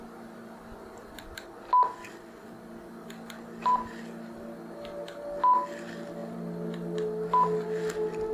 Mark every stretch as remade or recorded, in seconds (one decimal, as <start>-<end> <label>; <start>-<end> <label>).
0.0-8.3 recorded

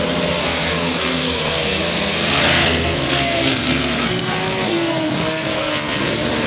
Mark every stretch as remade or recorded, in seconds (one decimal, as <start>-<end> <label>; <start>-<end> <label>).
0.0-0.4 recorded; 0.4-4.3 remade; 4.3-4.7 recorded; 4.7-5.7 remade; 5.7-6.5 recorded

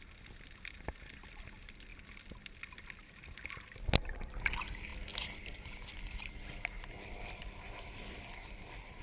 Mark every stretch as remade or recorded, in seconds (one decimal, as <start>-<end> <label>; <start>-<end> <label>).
0.0-9.0 recorded

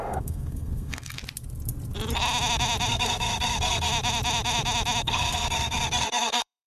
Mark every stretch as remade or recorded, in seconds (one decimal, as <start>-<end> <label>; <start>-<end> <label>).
0.0-1.2 remade; 1.2-2.9 recorded; 2.9-3.9 remade; 3.9-5.0 recorded; 5.0-6.7 remade

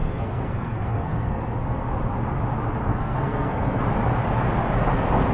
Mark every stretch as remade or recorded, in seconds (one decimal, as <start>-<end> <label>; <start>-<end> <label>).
0.0-1.9 remade; 1.9-2.8 recorded; 2.8-3.8 remade; 3.8-5.3 recorded